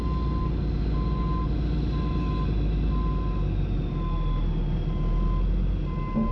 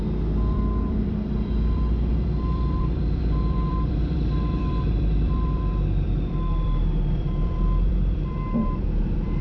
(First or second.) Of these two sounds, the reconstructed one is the second